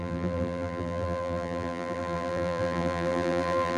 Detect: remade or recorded remade